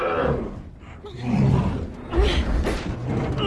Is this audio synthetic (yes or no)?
no